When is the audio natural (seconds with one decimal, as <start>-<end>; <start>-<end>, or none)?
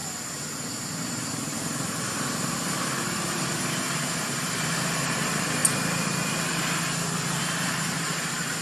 0.0-1.3; 5.6-7.4